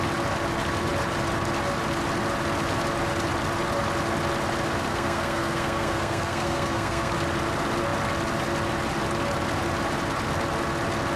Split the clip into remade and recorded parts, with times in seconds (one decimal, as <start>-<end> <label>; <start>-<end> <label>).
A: 0.0-4.9 recorded; 4.9-7.1 remade; 7.1-11.2 recorded